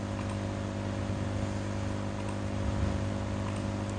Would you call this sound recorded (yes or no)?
yes